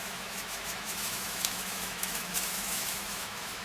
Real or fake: fake